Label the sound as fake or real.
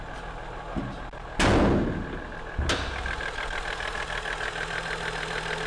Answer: real